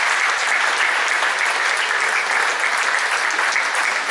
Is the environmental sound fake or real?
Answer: real